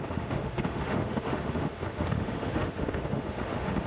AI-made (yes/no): yes